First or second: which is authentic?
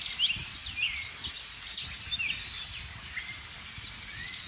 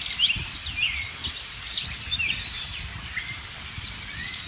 first